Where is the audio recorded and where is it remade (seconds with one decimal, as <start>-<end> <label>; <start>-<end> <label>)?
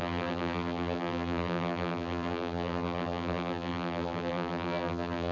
0.0-5.3 remade